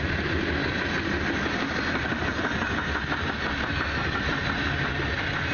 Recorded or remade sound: recorded